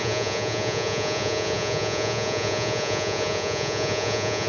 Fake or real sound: fake